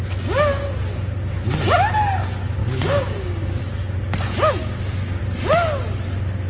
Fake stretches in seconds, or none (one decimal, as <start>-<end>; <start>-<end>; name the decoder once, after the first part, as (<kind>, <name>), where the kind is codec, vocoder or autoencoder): 2.6-3.6 (codec, DAC); 4.6-5.2